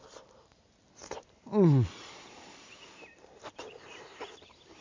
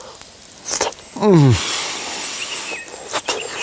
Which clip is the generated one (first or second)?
first